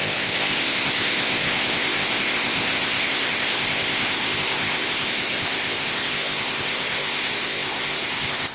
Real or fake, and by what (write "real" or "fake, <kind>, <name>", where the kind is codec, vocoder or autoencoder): fake, codec, ZipCodec